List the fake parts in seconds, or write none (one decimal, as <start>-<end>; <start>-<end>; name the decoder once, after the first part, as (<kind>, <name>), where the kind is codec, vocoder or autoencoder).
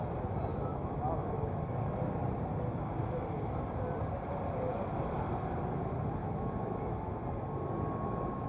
0.5-1.6 (autoencoder, DAC-VAE); 6.2-7.2